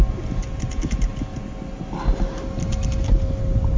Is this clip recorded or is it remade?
recorded